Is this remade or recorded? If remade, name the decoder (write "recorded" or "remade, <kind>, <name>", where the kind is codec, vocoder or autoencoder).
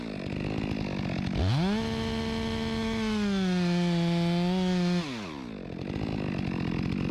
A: recorded